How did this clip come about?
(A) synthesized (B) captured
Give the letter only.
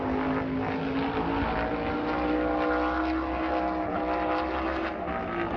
B